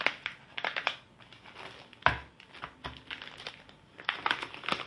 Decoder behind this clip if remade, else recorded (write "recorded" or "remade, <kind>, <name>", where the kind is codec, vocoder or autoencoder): recorded